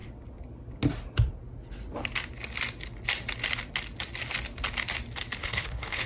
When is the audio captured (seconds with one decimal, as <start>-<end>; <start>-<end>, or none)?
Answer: 0.0-5.4